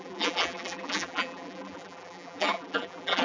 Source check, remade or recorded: remade